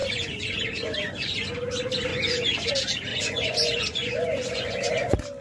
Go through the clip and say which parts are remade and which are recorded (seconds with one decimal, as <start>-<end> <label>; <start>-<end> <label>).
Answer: 0.0-1.5 remade; 1.5-2.1 recorded; 2.1-2.7 remade; 2.7-3.1 recorded; 3.1-4.9 remade; 4.9-5.4 recorded

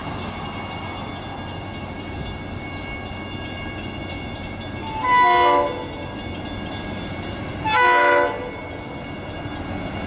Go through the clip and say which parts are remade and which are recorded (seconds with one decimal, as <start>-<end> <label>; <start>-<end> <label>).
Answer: 0.0-10.1 recorded

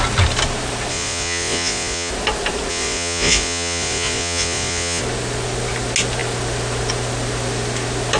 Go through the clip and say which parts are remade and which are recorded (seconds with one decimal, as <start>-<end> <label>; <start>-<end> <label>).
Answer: 0.0-0.9 recorded; 0.9-2.1 remade; 2.1-2.7 recorded; 2.7-5.0 remade; 5.0-8.2 recorded

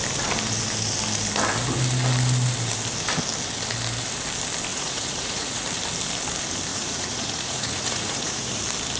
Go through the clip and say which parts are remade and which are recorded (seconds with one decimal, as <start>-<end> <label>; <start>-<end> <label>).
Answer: 0.0-4.7 recorded; 4.7-5.6 remade; 5.6-6.7 recorded; 6.7-8.6 remade; 8.6-9.0 recorded

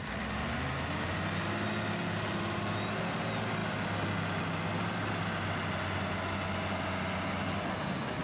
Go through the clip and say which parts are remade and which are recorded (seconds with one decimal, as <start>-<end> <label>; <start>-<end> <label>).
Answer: 0.0-8.2 recorded

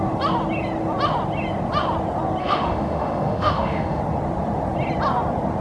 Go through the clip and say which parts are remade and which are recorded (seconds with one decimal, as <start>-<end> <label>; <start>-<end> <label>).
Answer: 0.0-2.4 recorded; 2.4-4.0 remade; 4.0-5.6 recorded